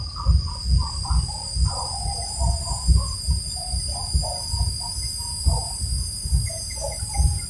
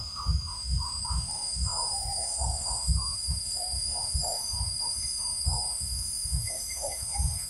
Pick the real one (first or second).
first